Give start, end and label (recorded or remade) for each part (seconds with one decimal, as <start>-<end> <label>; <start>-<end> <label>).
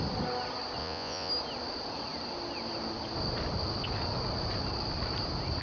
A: 0.0-0.8 recorded; 0.8-1.3 remade; 1.3-5.6 recorded